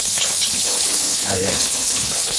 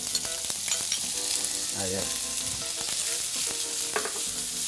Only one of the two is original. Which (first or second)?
second